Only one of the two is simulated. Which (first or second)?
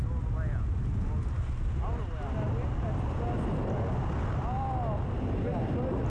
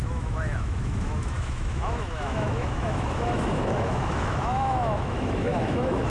second